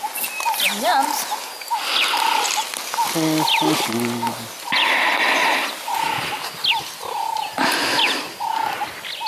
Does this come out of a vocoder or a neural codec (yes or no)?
no